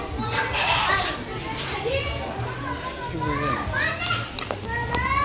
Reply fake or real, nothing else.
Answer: real